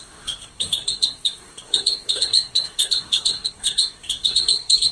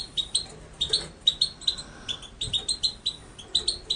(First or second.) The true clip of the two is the second